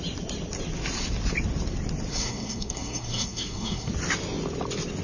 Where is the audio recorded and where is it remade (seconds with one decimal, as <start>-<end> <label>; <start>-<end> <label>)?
0.0-2.1 recorded; 2.1-3.9 remade; 3.9-5.0 recorded